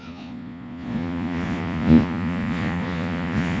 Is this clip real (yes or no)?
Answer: no